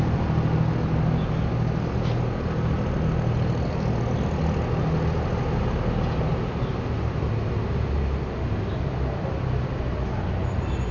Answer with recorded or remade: recorded